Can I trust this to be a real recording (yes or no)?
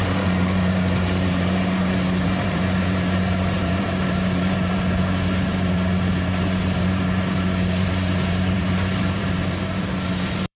no